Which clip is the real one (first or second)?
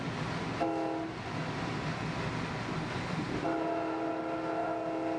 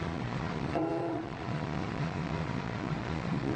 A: first